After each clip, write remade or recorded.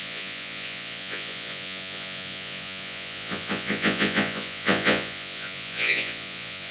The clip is remade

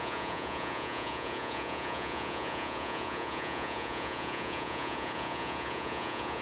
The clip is remade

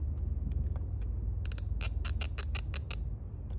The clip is recorded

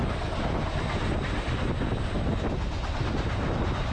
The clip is recorded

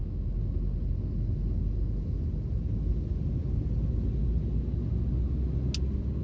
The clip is recorded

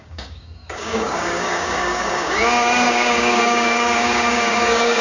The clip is remade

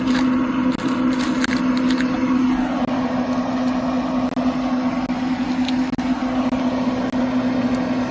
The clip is recorded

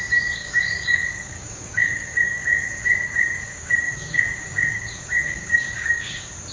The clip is remade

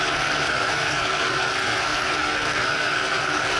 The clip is remade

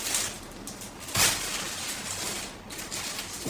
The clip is recorded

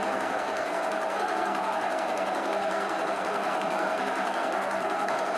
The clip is remade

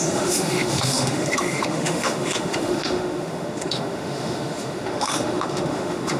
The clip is remade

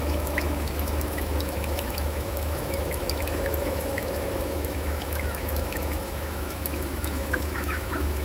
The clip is remade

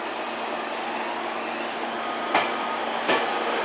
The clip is recorded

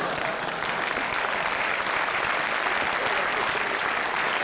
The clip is recorded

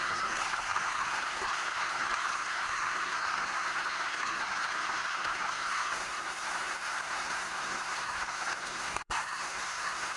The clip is remade